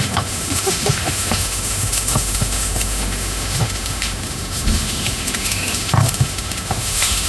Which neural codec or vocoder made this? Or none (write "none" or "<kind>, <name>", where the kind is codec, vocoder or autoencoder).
autoencoder, DAC-VAE